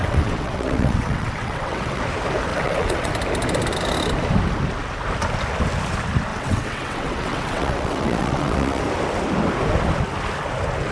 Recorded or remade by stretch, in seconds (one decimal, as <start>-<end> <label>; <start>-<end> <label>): 0.0-2.0 remade; 2.0-2.5 recorded; 2.5-3.1 remade; 3.1-6.3 recorded; 6.3-8.8 remade; 8.8-10.9 recorded